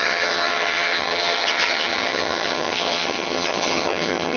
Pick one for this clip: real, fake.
fake